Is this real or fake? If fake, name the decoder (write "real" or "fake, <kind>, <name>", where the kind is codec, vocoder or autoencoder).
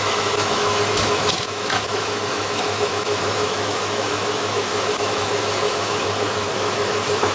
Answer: fake, autoencoder, DAC-VAE